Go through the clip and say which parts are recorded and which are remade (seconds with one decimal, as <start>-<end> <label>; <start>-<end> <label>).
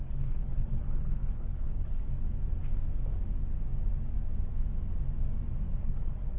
0.0-2.0 remade; 2.0-5.8 recorded; 5.8-6.4 remade